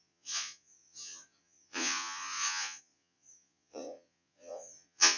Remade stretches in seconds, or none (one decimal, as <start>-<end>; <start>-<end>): 0.0-5.2

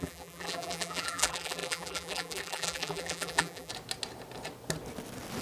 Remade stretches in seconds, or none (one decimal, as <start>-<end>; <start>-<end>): 0.0-3.7

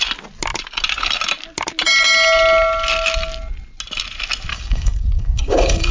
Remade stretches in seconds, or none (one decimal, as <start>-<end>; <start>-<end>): 4.5-5.9

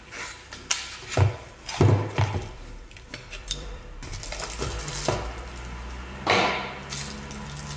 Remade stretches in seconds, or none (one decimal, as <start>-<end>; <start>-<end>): 2.4-4.9